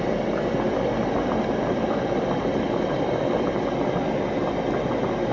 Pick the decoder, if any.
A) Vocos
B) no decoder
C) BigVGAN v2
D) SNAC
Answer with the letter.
B